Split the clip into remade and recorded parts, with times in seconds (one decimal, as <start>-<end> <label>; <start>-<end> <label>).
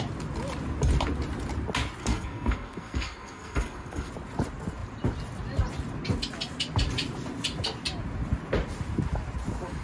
0.0-2.0 recorded; 2.0-4.1 remade; 4.1-9.8 recorded